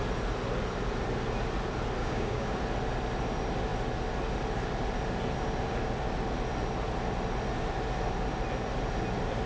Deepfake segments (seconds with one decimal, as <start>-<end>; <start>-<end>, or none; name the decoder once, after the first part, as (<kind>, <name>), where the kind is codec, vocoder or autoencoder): 2.0-2.6 (codec, DAC)